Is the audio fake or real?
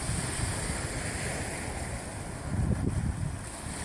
fake